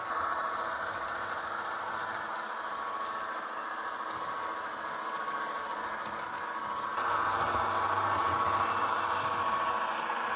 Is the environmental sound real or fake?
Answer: real